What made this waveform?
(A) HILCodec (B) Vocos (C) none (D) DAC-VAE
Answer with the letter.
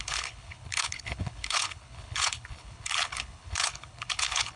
A